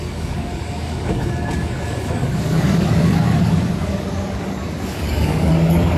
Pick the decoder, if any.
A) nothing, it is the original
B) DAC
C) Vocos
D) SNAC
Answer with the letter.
B